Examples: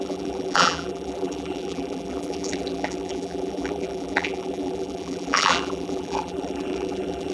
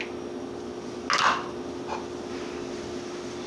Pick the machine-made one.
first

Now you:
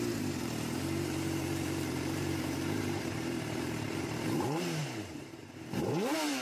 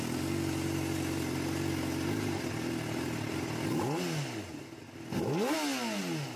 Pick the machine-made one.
first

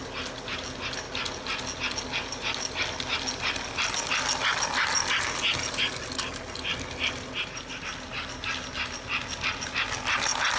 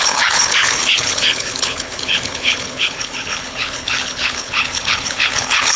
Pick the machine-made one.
second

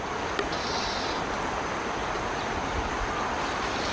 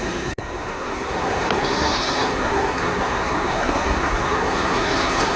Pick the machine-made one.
second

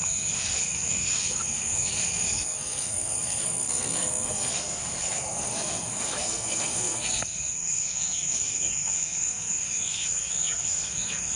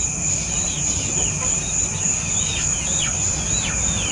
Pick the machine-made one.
first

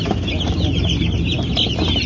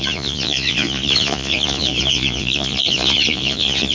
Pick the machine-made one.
second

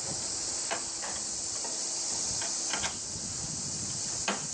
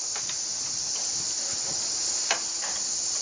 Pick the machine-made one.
first